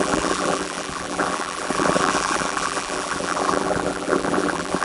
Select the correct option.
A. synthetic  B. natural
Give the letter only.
A